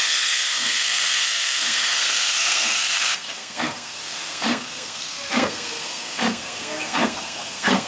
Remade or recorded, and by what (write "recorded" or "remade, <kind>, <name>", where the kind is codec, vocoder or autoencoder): remade, codec, SNAC